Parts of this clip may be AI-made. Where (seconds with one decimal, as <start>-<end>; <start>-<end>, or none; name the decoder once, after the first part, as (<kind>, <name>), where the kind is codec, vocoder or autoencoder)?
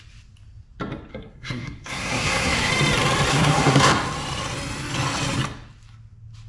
1.1-2.7 (codec, SNAC); 3.3-3.9